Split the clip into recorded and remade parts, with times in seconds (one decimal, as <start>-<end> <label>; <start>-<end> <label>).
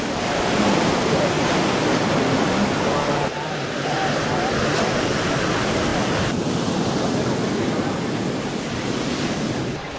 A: 0.0-10.0 recorded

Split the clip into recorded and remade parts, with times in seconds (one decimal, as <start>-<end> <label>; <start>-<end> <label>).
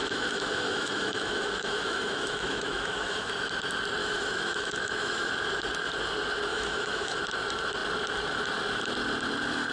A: 0.0-3.3 remade; 3.3-4.0 recorded; 4.0-5.3 remade; 5.3-6.5 recorded; 6.5-7.2 remade; 7.2-9.7 recorded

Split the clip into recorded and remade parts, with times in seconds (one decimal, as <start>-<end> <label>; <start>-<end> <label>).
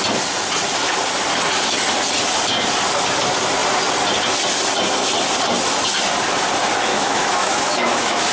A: 0.0-6.9 recorded; 6.9-8.3 remade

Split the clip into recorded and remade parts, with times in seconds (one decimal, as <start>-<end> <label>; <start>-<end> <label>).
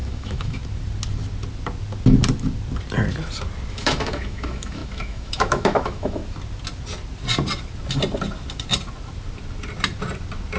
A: 0.0-0.6 remade; 0.6-3.7 recorded; 3.7-6.2 remade; 6.2-10.6 recorded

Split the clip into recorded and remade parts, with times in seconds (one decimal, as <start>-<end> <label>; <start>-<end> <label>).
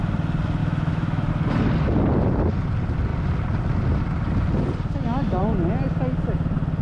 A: 0.0-0.6 recorded; 0.6-1.3 remade; 1.3-6.8 recorded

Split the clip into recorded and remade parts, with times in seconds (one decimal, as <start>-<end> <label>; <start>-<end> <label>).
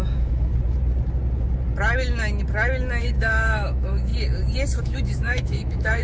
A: 0.0-0.5 remade; 0.5-3.0 recorded; 3.0-4.1 remade; 4.1-4.8 recorded; 4.8-6.0 remade